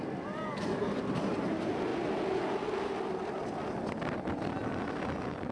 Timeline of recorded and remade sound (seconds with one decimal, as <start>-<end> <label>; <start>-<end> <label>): 0.0-0.5 recorded; 0.5-1.0 remade; 1.0-5.5 recorded